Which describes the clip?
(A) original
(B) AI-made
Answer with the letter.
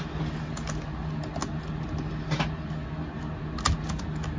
A